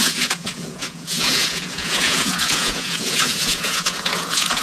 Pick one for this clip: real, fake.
fake